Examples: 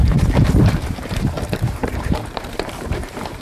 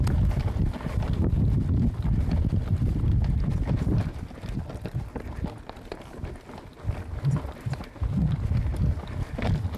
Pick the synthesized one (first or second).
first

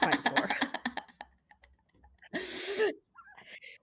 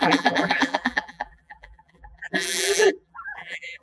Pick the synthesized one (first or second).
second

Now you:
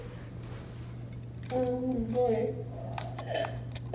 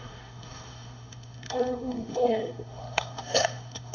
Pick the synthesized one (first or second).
second